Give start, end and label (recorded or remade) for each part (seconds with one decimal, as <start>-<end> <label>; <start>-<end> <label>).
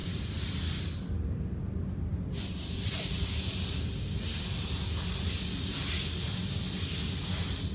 0.0-0.8 remade; 0.8-2.1 recorded; 2.1-6.6 remade; 6.6-7.7 recorded